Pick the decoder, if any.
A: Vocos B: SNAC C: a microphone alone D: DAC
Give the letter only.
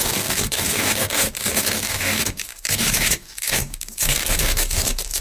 D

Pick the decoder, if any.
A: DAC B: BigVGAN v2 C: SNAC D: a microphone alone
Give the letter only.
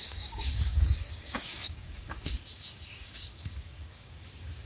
A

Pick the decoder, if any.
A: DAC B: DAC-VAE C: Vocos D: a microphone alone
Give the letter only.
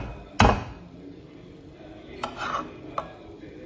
D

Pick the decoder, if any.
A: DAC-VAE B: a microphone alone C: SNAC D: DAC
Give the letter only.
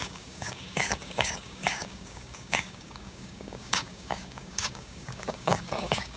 D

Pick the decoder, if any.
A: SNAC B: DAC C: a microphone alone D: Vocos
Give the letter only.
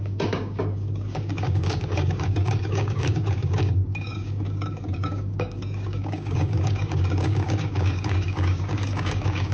B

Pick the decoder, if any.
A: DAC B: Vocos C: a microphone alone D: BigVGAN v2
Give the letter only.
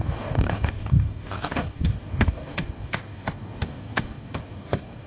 A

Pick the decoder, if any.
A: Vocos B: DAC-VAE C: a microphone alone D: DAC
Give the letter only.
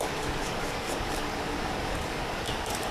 D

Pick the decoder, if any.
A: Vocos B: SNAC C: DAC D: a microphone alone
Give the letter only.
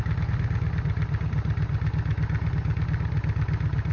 D